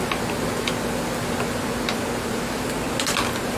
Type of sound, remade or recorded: recorded